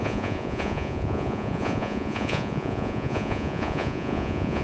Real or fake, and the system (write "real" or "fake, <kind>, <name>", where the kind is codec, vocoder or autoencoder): fake, vocoder, Vocos